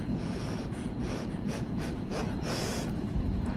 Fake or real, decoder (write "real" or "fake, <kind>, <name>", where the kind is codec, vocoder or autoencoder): fake, vocoder, Vocos